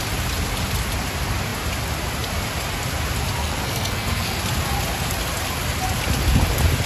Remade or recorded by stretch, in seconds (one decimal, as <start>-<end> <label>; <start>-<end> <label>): 0.0-3.4 recorded; 3.4-4.4 remade; 4.4-6.9 recorded